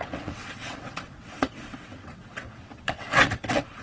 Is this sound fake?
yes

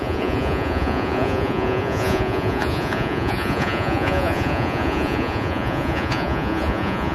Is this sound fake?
yes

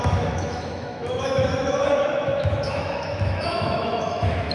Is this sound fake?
yes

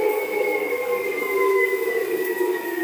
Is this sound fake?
yes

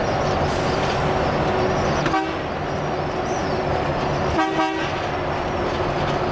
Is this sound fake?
no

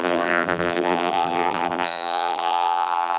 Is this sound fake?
yes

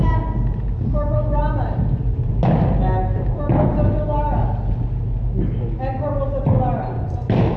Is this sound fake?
no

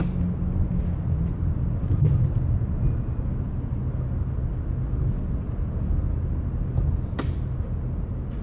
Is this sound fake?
no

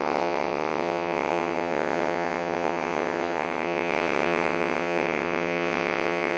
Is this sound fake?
yes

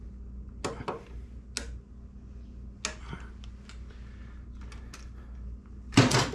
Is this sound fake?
no